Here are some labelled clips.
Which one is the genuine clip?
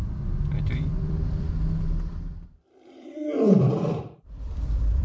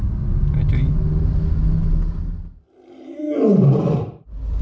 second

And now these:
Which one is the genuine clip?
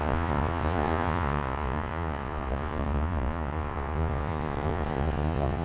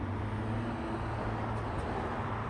second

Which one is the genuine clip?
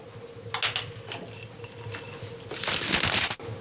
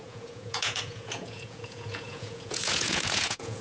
first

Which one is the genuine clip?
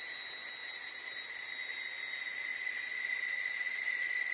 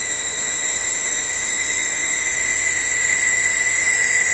first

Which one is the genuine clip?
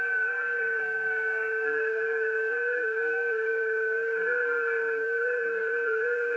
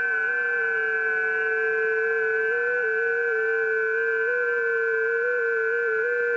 second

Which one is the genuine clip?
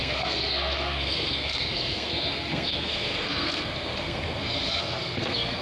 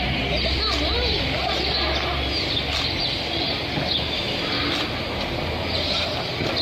second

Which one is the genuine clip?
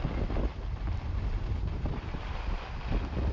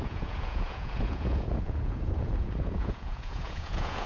first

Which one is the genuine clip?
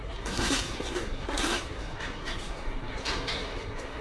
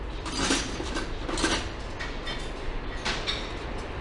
second